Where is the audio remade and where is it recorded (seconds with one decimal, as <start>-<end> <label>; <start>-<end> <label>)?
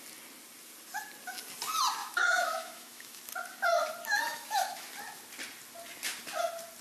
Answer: 0.0-2.0 recorded; 2.0-3.2 remade; 3.2-4.3 recorded; 4.3-4.9 remade; 4.9-6.8 recorded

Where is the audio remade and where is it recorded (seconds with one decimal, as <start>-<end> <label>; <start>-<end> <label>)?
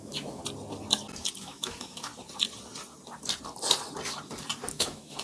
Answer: 0.0-0.4 remade; 0.4-1.4 recorded; 1.4-2.1 remade; 2.1-4.7 recorded; 4.7-5.2 remade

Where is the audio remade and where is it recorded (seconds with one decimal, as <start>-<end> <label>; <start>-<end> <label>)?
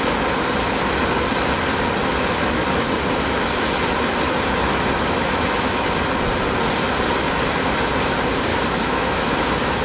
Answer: 0.0-4.7 recorded; 4.7-5.9 remade; 5.9-8.5 recorded; 8.5-9.8 remade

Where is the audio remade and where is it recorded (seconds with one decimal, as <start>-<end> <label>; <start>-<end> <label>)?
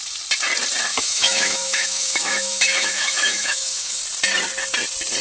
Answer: 0.0-0.9 recorded; 0.9-4.0 remade; 4.0-5.2 recorded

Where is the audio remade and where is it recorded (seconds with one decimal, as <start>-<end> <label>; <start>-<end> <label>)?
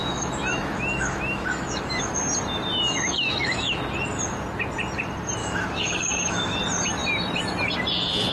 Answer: 0.0-2.2 remade; 2.2-2.7 recorded; 2.7-3.8 remade; 3.8-5.4 recorded; 5.4-6.6 remade; 6.6-8.3 recorded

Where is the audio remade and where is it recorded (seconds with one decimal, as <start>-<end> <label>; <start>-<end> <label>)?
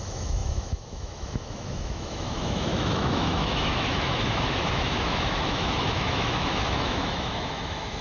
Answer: 0.0-8.0 remade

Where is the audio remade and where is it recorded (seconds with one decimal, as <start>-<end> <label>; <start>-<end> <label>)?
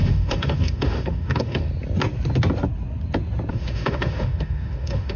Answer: 0.0-1.7 remade; 1.7-3.5 recorded; 3.5-5.2 remade